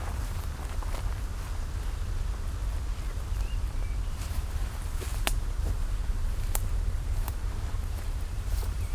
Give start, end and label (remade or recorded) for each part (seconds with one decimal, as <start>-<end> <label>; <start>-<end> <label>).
0.0-0.8 remade; 0.8-3.0 recorded; 3.0-8.9 remade